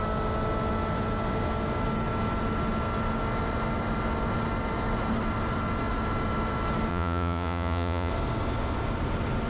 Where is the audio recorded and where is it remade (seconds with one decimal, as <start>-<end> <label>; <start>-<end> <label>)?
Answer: 0.0-6.9 recorded; 6.9-8.1 remade; 8.1-9.5 recorded